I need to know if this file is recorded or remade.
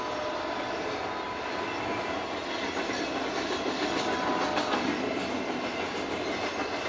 recorded